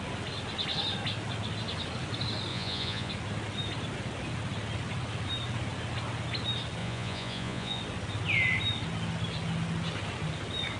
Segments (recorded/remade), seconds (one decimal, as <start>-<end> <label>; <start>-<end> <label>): 0.0-2.5 recorded; 2.5-3.1 remade; 3.1-6.8 recorded; 6.8-7.8 remade; 7.8-10.8 recorded